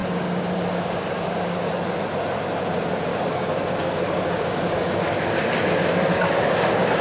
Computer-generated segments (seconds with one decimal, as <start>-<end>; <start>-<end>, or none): 0.0-1.7; 3.1-7.0